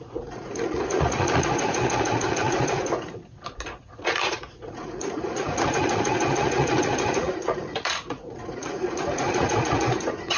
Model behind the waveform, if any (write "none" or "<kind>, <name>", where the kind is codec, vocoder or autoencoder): vocoder, Vocos